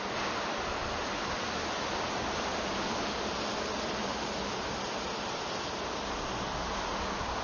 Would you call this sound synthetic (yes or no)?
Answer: no